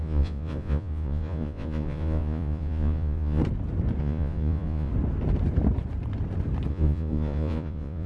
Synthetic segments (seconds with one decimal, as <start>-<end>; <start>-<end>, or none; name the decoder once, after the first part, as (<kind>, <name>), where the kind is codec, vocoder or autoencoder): 0.0-3.4 (vocoder, Vocos); 4.0-4.9; 6.7-8.1